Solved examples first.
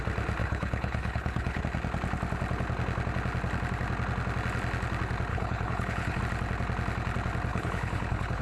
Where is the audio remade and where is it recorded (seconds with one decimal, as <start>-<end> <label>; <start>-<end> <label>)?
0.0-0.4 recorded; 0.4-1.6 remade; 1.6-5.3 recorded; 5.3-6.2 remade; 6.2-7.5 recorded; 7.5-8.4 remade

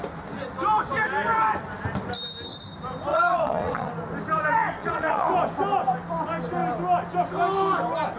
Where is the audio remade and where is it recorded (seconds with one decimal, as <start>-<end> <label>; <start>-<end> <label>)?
0.0-3.1 recorded; 3.1-3.9 remade; 3.9-4.8 recorded; 4.8-5.3 remade; 5.3-8.2 recorded

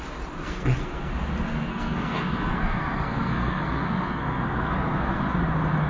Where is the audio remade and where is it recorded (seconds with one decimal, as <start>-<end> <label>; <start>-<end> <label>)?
0.0-0.4 recorded; 0.4-1.1 remade; 1.1-1.7 recorded; 1.7-5.2 remade; 5.2-5.9 recorded

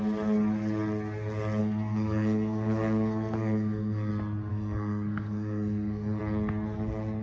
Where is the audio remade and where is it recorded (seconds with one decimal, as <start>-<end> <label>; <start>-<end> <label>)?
0.0-1.6 recorded; 1.6-4.1 remade; 4.1-4.5 recorded; 4.5-6.2 remade; 6.2-7.2 recorded